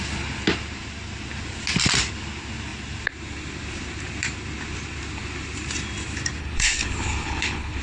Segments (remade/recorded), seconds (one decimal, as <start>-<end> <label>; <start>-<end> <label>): 0.0-6.4 recorded; 6.4-7.8 remade